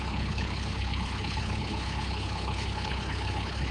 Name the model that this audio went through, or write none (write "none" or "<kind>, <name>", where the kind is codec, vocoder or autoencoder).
codec, HILCodec